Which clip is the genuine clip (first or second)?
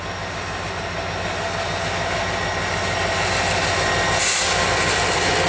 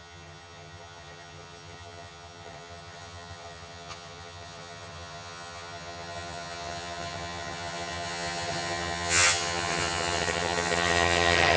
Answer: first